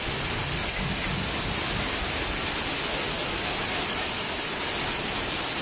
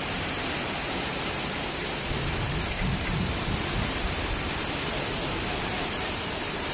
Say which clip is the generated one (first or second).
second